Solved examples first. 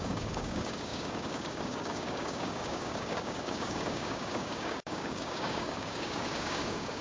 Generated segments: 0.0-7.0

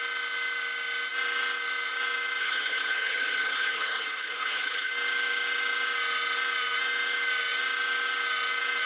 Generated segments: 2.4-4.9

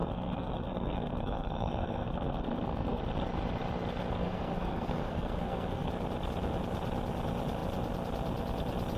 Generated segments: 0.0-3.0; 4.2-5.9